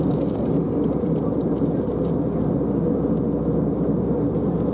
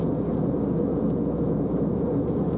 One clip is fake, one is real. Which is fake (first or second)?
second